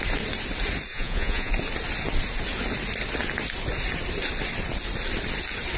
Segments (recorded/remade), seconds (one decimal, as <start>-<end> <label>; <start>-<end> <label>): 0.0-0.9 recorded; 0.9-1.5 remade; 1.5-5.8 recorded